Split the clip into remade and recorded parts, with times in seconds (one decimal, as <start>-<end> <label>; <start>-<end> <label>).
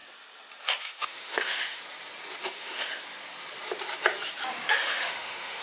0.0-0.8 recorded; 0.8-1.8 remade; 1.8-2.4 recorded; 2.4-2.9 remade; 2.9-4.7 recorded; 4.7-5.6 remade